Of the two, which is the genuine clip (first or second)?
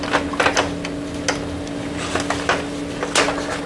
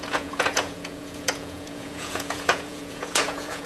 first